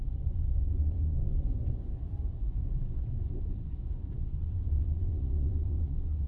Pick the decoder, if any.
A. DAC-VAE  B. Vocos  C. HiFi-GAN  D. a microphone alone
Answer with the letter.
B